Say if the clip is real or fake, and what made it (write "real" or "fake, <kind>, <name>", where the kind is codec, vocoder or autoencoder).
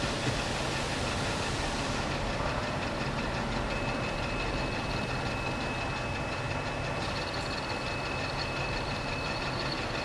real